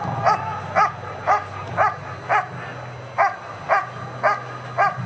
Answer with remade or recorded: recorded